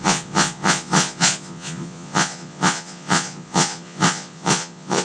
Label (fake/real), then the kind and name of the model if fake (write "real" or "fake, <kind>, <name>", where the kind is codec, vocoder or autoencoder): fake, vocoder, Vocos